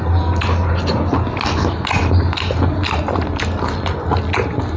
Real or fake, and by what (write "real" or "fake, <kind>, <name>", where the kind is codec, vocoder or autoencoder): real